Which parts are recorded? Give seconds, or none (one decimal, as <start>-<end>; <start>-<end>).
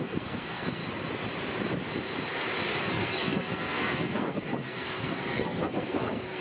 0.8-2.8